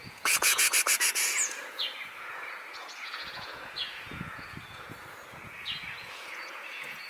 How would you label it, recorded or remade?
remade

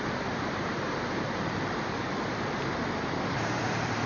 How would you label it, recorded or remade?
remade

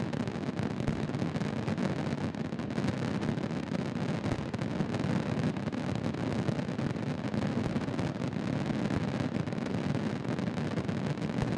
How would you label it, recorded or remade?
recorded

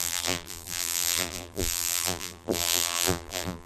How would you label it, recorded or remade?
remade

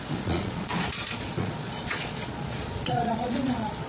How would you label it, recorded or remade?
remade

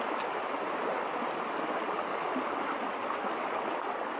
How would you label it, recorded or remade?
recorded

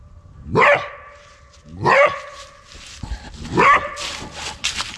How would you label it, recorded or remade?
recorded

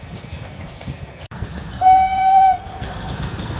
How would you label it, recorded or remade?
remade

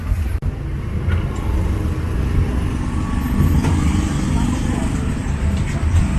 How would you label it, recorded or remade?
recorded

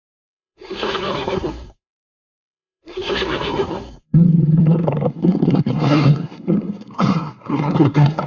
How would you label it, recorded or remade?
remade